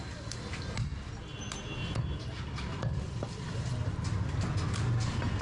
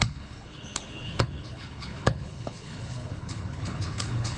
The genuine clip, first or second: first